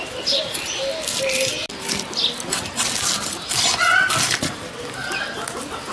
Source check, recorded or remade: recorded